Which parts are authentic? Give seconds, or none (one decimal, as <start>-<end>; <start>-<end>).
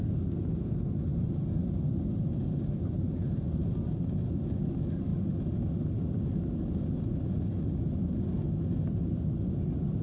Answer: 0.0-10.0